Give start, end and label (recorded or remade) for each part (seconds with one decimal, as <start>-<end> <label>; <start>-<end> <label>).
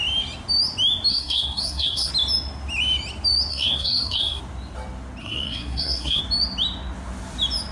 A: 0.0-1.1 recorded; 1.1-2.1 remade; 2.1-3.5 recorded; 3.5-4.4 remade; 4.4-5.2 recorded; 5.2-6.2 remade; 6.2-7.7 recorded